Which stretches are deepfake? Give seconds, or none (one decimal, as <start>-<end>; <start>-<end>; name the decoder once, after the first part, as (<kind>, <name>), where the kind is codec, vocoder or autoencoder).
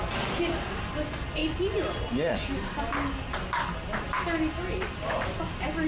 none